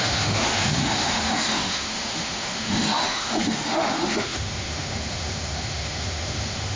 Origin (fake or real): fake